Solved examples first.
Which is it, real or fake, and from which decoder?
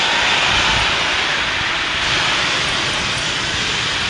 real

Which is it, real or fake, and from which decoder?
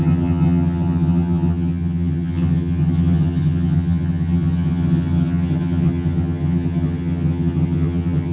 fake, vocoder, HiFi-GAN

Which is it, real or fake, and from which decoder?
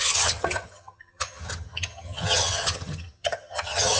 fake, vocoder, HiFi-GAN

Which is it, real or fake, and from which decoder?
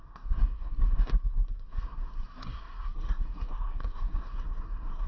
fake, codec, SNAC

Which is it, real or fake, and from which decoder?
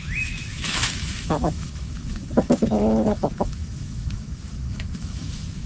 fake, autoencoder, DAC-VAE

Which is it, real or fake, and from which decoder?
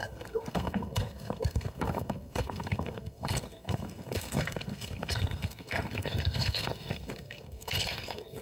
fake, codec, SNAC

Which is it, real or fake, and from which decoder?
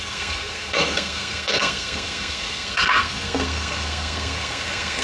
fake, codec, SNAC